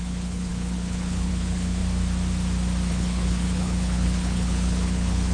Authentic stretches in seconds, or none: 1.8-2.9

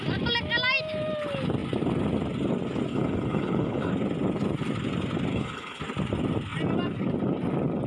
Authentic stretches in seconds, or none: 0.0-2.9; 3.9-5.3; 5.8-7.9

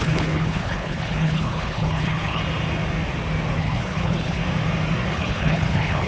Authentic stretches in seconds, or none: 2.4-3.6; 4.4-5.1

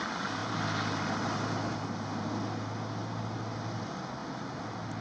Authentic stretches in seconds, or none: 0.0-5.0